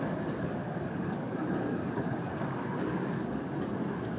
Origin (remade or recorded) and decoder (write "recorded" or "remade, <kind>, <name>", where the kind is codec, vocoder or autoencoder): remade, codec, DAC